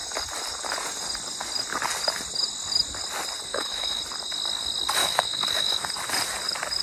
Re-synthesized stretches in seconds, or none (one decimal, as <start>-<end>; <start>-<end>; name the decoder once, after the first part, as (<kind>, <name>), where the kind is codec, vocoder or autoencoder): 3.5-4.0 (autoencoder, DAC-VAE); 5.0-5.9